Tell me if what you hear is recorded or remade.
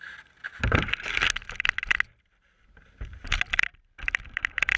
recorded